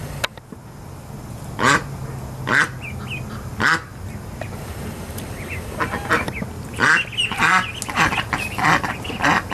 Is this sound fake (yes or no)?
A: no